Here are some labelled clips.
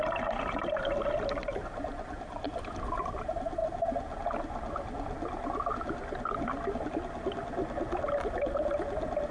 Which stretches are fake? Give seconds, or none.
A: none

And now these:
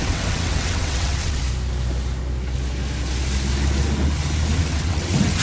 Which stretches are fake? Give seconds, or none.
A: 0.0-1.4; 4.6-5.4

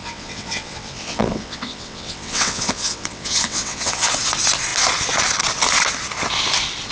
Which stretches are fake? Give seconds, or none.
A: 0.0-4.1

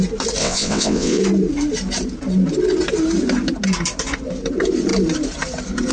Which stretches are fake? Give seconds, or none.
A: 0.4-1.2

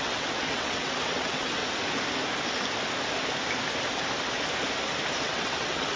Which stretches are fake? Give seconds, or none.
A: 0.0-1.6; 5.2-6.0

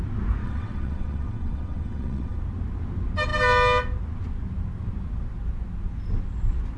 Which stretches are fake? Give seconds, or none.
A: 0.4-2.4

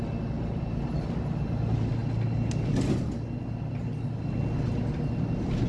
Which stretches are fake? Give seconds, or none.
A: none